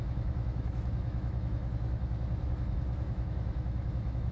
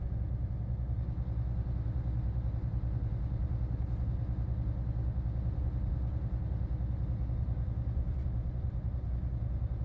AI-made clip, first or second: first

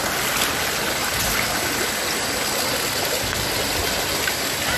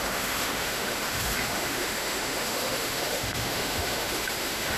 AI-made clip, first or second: second